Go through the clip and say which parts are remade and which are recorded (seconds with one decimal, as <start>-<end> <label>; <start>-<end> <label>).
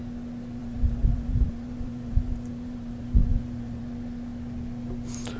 0.0-0.6 recorded; 0.6-3.8 remade; 3.8-5.4 recorded